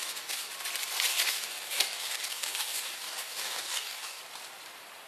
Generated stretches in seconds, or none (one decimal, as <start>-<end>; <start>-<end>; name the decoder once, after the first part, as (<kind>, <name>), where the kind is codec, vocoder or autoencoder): 0.0-0.5 (codec, DAC); 1.1-4.2